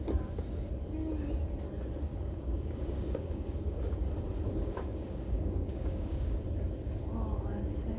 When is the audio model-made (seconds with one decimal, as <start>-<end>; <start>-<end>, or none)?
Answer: 2.1-4.0; 4.5-6.4

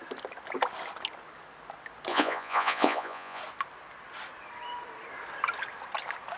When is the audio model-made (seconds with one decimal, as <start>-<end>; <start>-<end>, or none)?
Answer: 2.1-3.4